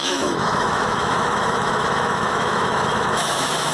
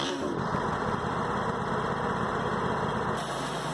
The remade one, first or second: first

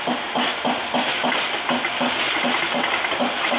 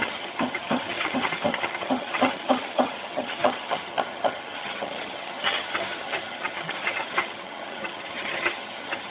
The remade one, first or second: second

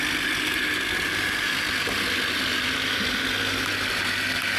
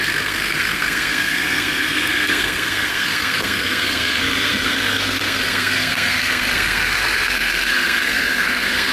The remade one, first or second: second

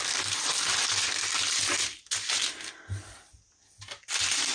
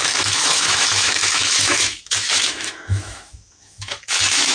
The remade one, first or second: second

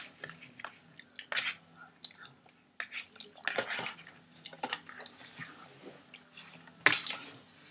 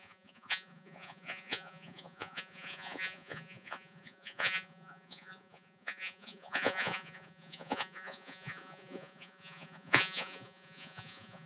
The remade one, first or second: second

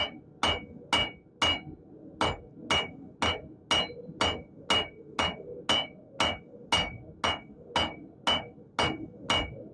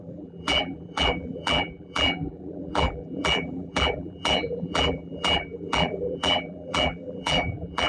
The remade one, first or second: second